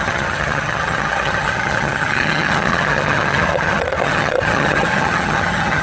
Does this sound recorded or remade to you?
remade